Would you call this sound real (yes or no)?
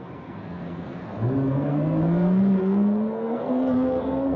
no